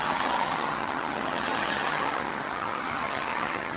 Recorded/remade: remade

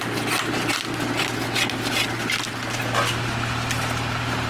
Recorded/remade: recorded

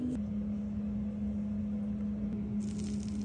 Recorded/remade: recorded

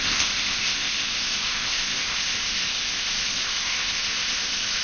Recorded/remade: remade